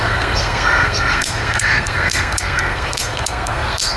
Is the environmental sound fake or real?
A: fake